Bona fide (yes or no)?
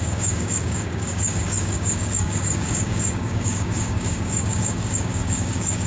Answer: no